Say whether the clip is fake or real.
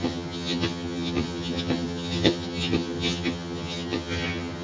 fake